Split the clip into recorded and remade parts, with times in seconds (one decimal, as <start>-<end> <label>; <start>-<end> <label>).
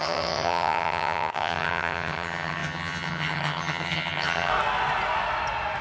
0.0-4.5 remade; 4.5-5.8 recorded